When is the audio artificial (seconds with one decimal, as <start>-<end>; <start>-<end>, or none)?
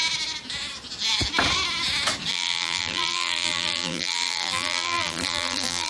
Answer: 2.3-5.9